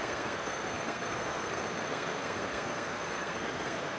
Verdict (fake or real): fake